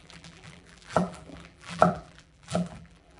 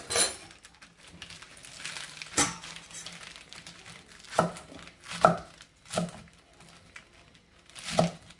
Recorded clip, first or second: second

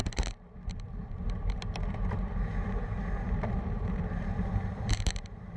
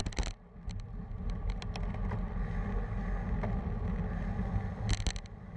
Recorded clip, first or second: second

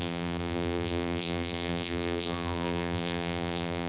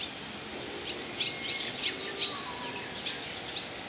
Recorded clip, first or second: second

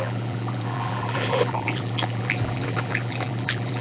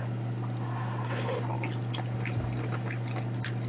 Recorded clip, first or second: second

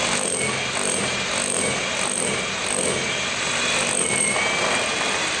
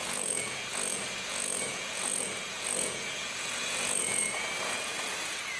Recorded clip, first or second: first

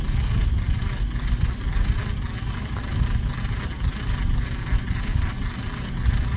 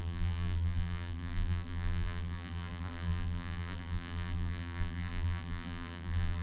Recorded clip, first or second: first